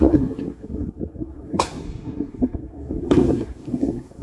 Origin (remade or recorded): remade